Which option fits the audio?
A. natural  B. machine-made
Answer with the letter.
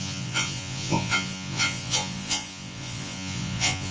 B